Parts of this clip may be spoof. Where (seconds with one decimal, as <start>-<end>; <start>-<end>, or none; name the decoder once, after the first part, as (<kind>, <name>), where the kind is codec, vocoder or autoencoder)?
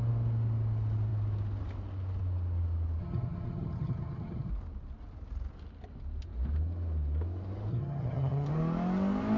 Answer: 3.0-4.5 (vocoder, HiFi-GAN); 7.7-8.5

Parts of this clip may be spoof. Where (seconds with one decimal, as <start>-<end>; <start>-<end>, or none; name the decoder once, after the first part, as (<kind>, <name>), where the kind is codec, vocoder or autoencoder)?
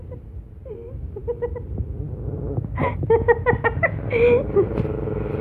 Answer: 0.0-1.2 (vocoder, BigVGAN v2); 4.4-5.4